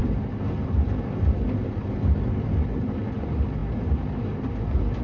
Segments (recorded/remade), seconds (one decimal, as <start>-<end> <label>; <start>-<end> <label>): 0.0-5.0 recorded